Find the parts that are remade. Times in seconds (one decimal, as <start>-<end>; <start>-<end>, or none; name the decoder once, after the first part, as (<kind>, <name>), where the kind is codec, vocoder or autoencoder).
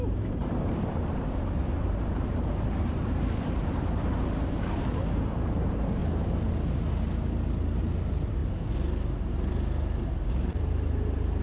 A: 0.0-6.0 (vocoder, BigVGAN v2); 7.8-8.4; 10.5-11.4